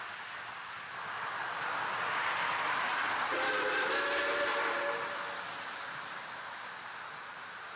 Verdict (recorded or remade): recorded